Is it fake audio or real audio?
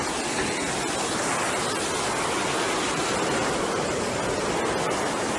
real